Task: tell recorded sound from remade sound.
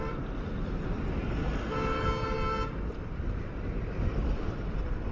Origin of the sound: recorded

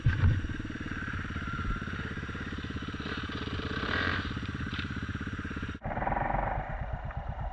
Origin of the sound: remade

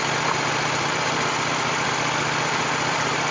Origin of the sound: remade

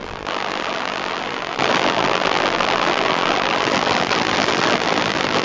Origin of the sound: remade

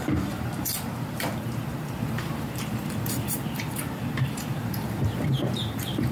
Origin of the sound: remade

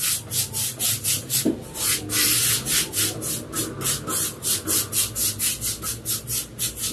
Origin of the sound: recorded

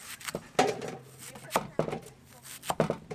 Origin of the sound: recorded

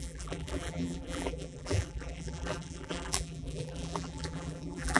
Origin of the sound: remade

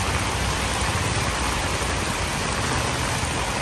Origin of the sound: recorded